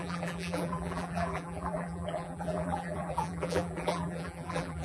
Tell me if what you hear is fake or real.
fake